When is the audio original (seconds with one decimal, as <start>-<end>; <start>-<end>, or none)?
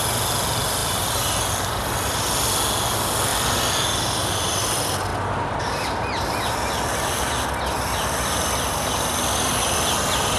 0.0-0.8; 1.4-10.4